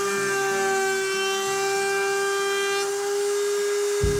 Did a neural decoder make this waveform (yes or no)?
no